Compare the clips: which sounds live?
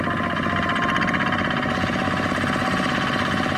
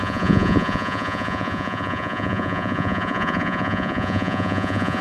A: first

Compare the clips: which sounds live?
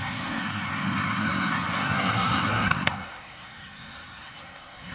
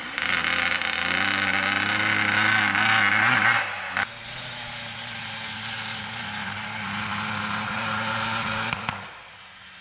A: second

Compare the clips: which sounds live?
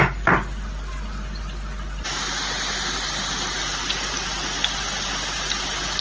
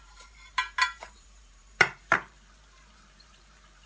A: first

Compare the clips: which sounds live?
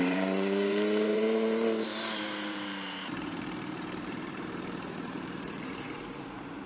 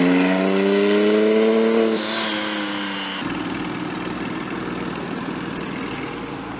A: second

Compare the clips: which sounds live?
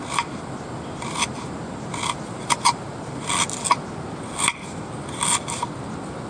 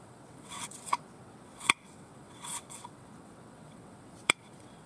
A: first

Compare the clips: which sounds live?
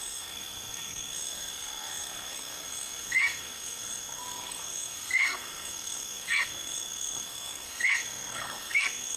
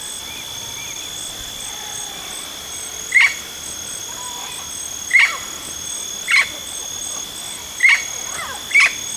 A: second